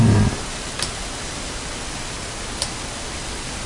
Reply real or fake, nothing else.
real